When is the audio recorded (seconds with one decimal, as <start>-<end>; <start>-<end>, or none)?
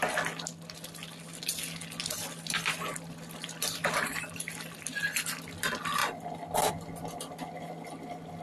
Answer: 0.0-2.0; 6.0-6.7